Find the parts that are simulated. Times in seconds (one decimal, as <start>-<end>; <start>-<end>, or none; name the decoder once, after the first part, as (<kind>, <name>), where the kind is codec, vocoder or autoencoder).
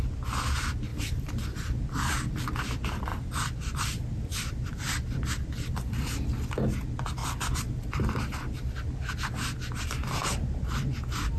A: 0.9-2.1 (vocoder, BigVGAN v2); 3.1-5.7; 7.2-9.1